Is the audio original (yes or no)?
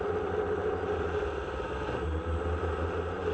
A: yes